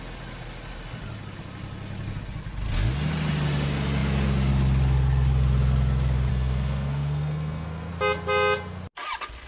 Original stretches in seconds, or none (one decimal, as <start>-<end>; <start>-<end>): 0.0-6.3; 7.9-9.5